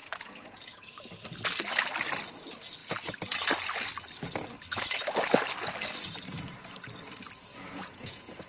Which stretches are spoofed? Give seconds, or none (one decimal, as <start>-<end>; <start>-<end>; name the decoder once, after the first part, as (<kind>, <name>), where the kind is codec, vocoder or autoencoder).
0.0-0.9 (vocoder, Vocos); 7.5-8.5